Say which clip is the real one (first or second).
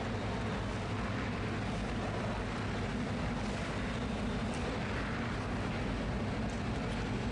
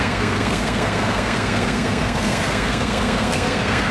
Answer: first